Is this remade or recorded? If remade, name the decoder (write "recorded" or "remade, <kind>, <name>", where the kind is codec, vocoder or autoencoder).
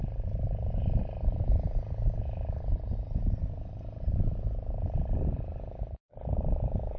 recorded